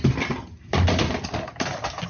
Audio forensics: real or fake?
real